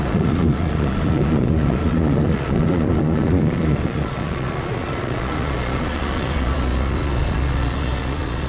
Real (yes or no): no